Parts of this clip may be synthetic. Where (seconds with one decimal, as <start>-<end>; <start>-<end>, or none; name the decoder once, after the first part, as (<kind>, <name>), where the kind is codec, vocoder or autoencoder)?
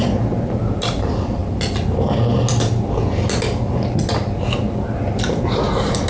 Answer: none